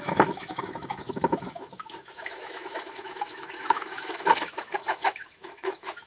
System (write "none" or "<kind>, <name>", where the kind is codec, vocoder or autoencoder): autoencoder, DAC-VAE